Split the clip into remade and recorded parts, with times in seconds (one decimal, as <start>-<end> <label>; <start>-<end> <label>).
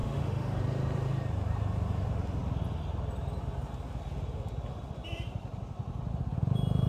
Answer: 0.0-0.6 remade; 0.6-6.9 recorded